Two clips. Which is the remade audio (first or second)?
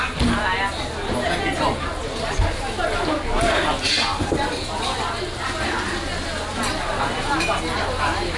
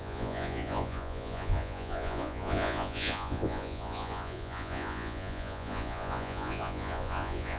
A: second